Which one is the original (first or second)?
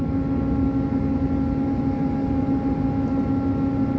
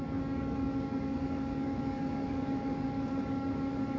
first